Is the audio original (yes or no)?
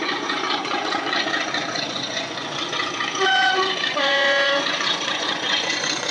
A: no